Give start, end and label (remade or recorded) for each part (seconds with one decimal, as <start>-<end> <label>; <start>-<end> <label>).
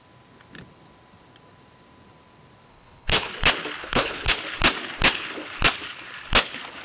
0.0-2.7 recorded; 2.7-3.3 remade; 3.3-3.8 recorded; 3.8-4.3 remade; 4.3-6.8 recorded